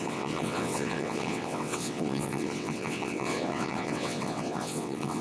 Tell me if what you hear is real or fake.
fake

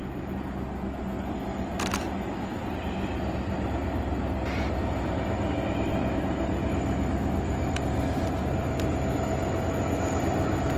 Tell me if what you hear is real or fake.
real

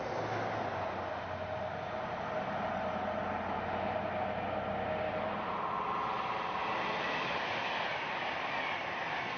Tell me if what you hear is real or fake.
real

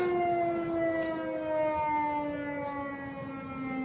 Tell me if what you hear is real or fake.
real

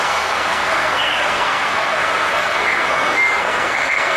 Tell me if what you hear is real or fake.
fake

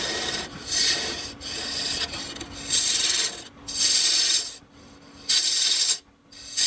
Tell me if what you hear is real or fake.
real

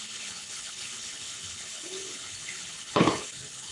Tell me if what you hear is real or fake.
fake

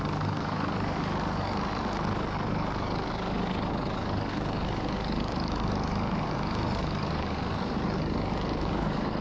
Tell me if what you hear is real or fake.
fake